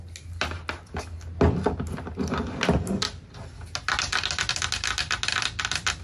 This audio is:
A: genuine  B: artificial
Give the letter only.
A